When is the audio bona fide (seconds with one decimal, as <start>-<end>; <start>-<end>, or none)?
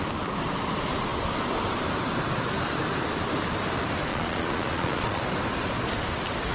0.0-4.1; 5.2-6.5